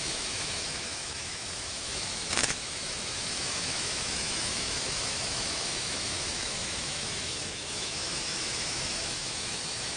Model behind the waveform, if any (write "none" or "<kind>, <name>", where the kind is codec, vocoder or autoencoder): autoencoder, DAC-VAE